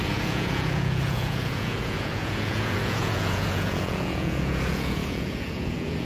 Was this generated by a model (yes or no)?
yes